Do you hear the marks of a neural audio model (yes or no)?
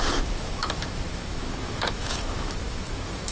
yes